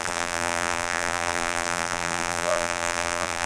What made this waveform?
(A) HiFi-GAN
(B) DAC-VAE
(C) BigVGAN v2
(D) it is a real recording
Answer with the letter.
C